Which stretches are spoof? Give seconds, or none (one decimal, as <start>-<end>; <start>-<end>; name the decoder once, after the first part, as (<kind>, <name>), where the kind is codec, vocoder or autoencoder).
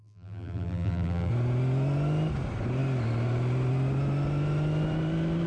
0.0-1.3 (vocoder, BigVGAN v2)